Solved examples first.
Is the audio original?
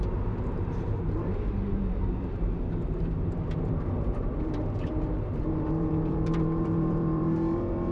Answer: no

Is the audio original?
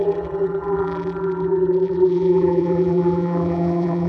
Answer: no